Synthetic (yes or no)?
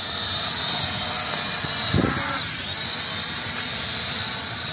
no